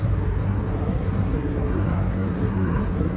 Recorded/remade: remade